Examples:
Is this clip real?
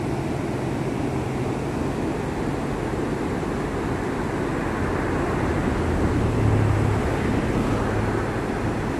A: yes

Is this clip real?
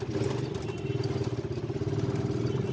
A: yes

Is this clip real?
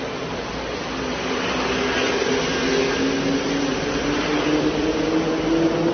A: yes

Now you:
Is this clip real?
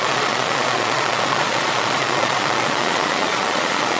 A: no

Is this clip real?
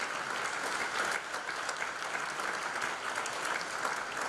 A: yes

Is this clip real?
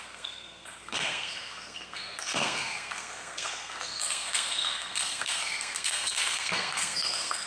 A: no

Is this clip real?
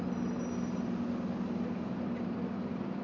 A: yes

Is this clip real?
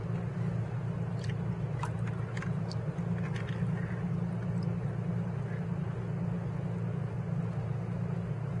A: yes